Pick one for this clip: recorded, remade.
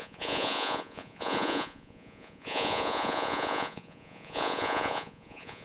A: remade